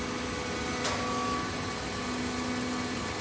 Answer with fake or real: real